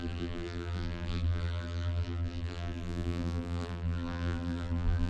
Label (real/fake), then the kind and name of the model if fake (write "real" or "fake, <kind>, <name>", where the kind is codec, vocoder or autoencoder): fake, vocoder, BigVGAN v2